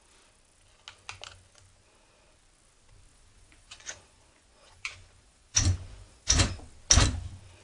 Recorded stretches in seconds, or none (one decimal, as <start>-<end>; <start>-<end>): 0.0-3.1; 6.5-7.6